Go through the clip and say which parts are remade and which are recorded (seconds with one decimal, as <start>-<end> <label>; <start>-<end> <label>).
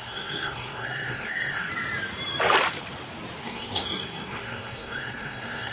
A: 0.0-1.7 remade; 1.7-3.4 recorded; 3.4-5.7 remade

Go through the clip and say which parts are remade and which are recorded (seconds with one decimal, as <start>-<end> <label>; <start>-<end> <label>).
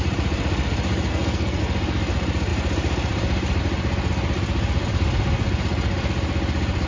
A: 0.0-1.1 recorded; 1.1-1.6 remade; 1.6-6.9 recorded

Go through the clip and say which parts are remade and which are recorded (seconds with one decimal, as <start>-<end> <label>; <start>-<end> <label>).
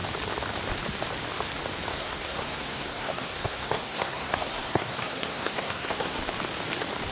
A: 0.0-1.9 recorded; 1.9-6.2 remade; 6.2-7.1 recorded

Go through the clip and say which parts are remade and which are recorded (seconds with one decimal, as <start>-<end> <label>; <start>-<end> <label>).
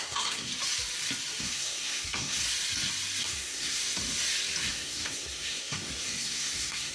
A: 0.0-0.5 remade; 0.5-1.4 recorded; 1.4-2.4 remade; 2.4-3.2 recorded; 3.2-3.8 remade; 3.8-4.7 recorded; 4.7-6.9 remade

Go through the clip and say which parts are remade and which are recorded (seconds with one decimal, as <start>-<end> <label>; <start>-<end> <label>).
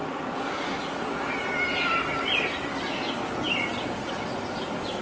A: 0.0-5.0 recorded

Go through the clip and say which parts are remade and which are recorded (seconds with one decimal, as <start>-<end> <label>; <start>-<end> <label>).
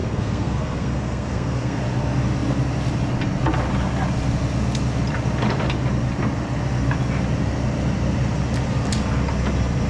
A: 0.0-1.8 remade; 1.8-9.9 recorded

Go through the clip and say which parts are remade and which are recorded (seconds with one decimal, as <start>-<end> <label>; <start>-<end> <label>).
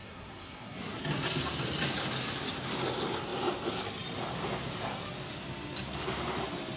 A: 0.0-1.0 remade; 1.0-6.8 recorded